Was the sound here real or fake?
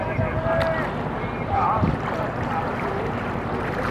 real